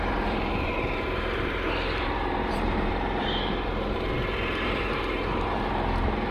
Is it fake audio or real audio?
fake